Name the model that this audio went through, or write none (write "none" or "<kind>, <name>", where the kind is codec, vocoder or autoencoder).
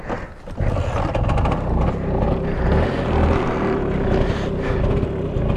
none